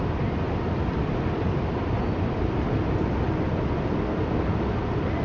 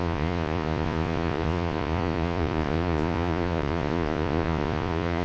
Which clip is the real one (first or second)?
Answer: first